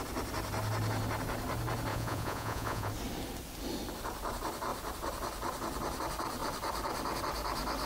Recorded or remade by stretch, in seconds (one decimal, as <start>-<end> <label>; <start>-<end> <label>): 0.0-1.9 recorded; 1.9-2.9 remade; 2.9-7.9 recorded